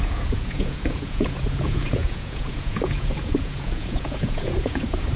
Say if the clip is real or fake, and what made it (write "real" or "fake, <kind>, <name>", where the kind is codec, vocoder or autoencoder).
fake, vocoder, Vocos